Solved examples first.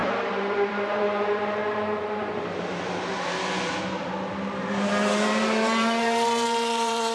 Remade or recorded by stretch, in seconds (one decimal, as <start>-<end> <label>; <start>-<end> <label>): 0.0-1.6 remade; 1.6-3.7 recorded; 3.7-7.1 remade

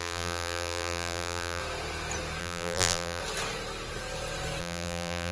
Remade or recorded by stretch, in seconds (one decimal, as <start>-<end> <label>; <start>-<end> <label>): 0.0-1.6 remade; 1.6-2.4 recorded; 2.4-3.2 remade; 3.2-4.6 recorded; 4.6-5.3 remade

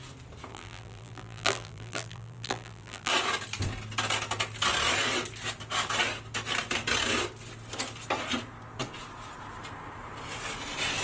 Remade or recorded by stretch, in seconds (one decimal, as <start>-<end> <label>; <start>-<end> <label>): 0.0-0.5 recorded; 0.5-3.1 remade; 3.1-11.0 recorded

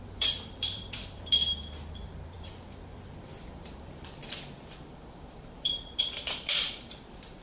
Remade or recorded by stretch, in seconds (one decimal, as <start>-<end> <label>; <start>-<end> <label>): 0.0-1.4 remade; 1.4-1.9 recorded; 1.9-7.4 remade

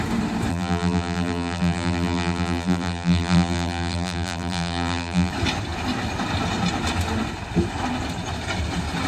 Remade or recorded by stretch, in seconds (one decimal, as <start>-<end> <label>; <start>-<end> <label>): 0.0-0.5 recorded; 0.5-5.3 remade; 5.3-9.1 recorded